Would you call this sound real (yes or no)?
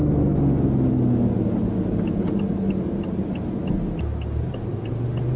yes